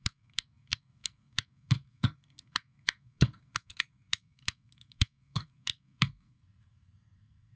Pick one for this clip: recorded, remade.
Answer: remade